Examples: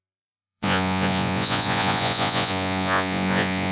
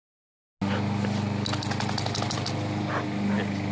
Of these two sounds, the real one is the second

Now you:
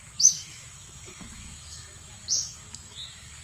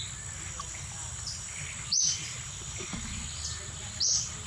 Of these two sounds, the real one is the second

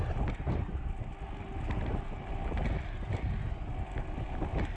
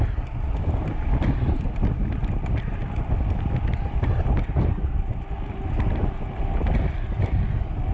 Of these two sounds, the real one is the first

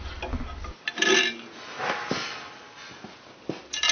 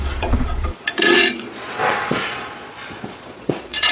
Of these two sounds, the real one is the first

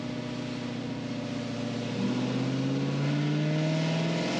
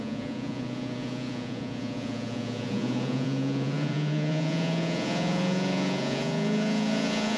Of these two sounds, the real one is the first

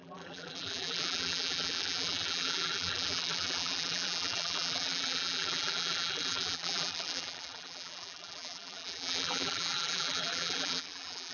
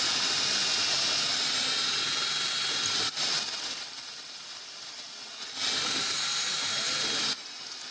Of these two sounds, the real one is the second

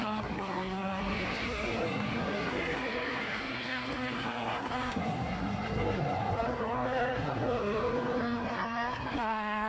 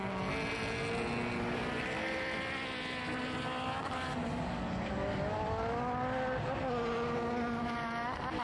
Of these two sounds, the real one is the second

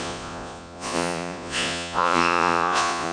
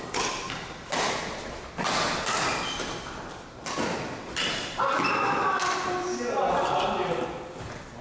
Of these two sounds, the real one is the second